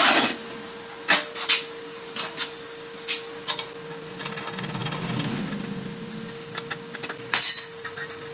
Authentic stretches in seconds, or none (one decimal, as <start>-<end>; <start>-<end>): 0.0-8.3